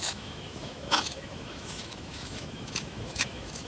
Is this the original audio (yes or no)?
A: no